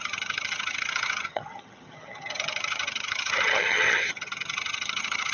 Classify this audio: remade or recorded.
remade